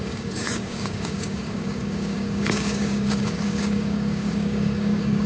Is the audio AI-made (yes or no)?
yes